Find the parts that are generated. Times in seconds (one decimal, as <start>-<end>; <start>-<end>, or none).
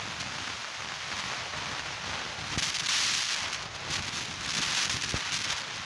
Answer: none